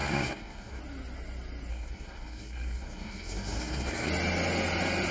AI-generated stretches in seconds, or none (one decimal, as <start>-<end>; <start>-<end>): 0.0-0.8; 1.7-4.1